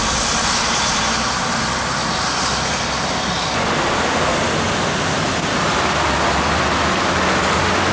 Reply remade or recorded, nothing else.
recorded